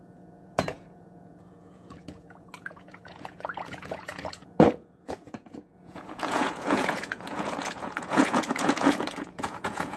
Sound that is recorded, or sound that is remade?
remade